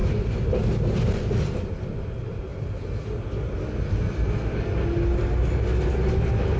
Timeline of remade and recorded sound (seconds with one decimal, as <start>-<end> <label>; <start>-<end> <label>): 0.0-1.1 remade; 1.1-6.6 recorded